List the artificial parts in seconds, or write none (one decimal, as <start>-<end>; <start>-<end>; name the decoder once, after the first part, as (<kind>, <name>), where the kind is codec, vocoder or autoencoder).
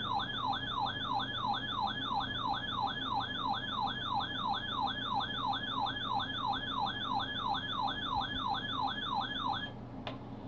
none